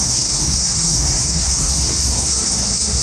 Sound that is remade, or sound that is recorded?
remade